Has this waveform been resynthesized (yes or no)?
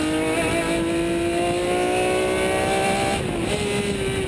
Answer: no